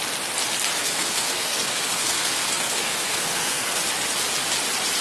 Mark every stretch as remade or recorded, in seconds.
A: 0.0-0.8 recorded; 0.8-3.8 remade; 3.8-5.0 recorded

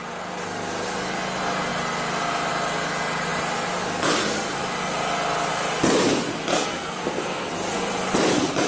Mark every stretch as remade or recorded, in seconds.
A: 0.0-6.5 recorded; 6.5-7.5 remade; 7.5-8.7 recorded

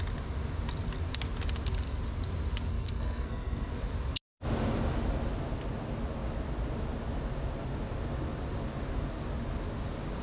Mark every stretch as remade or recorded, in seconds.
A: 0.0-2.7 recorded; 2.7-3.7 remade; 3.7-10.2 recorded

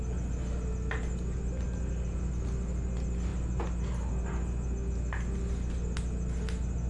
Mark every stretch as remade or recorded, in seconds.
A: 0.0-6.9 recorded

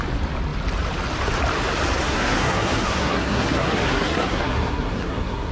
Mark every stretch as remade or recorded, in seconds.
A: 0.0-2.1 recorded; 2.1-5.5 remade

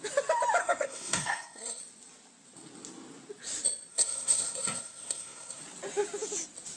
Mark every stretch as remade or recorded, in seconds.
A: 0.0-0.6 recorded; 0.6-1.8 remade; 1.8-3.9 recorded; 3.9-5.6 remade; 5.6-6.8 recorded